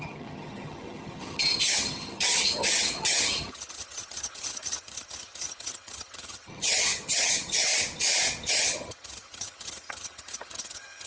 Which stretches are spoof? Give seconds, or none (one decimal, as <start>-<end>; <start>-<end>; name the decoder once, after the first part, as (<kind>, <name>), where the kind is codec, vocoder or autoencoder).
0.0-7.7 (vocoder, HiFi-GAN); 8.5-11.1